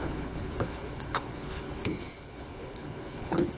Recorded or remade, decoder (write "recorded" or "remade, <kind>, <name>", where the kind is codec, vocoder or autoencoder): remade, codec, HILCodec